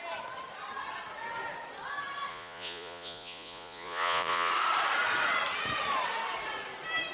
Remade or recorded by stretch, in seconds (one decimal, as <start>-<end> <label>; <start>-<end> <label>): 0.0-2.3 recorded; 2.3-4.5 remade; 4.5-7.1 recorded